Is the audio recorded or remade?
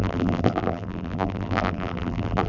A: remade